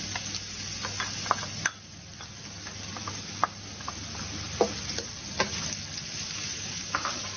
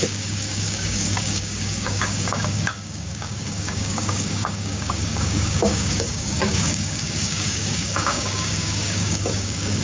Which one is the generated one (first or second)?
second